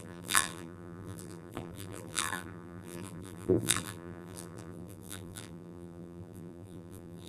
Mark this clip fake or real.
fake